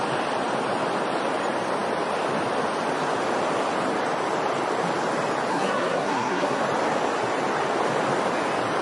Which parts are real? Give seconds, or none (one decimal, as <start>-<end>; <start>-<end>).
0.0-5.5; 6.6-8.8